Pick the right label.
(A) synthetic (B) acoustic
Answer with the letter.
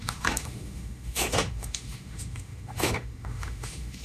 A